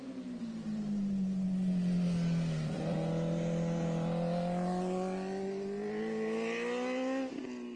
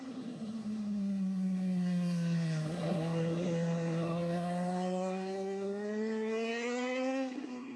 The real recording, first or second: first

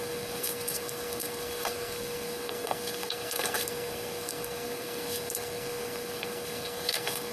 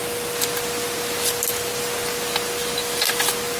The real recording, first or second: second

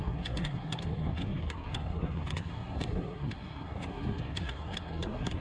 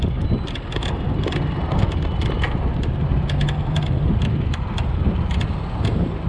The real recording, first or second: second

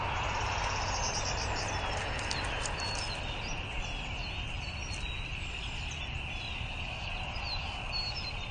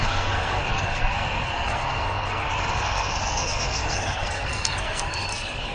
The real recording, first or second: first